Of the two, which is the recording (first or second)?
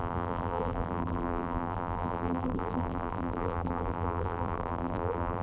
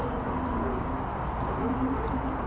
second